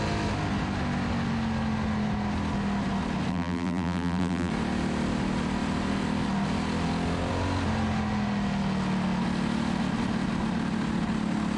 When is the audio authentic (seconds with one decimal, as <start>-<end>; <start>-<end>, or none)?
0.0-3.3; 4.5-11.6